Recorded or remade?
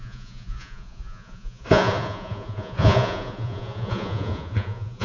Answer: remade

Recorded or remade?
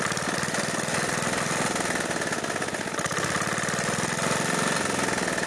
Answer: recorded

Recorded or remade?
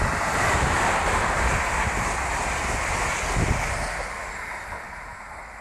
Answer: recorded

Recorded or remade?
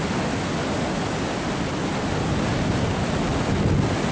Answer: recorded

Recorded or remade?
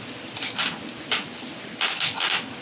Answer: recorded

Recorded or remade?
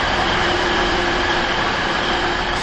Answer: remade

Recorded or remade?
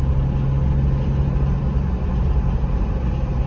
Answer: recorded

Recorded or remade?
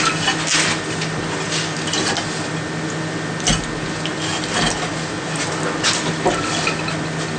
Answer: recorded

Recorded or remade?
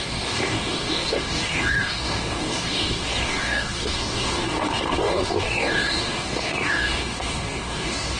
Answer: remade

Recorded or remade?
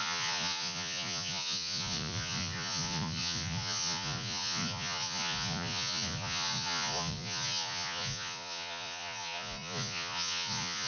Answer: remade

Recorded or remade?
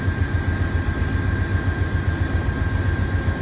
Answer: recorded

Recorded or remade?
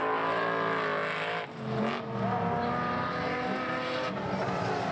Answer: recorded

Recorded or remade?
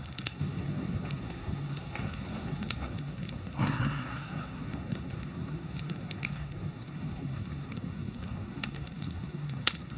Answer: remade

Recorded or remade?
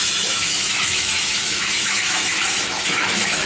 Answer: remade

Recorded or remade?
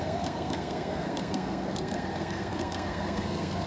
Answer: remade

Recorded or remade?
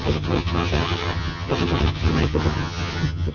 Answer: remade